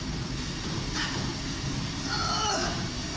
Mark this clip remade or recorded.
recorded